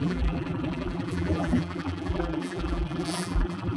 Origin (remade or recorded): remade